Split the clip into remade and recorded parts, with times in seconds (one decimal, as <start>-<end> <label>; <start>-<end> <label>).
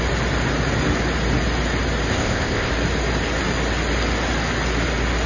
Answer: 0.0-2.1 recorded; 2.1-2.7 remade; 2.7-5.3 recorded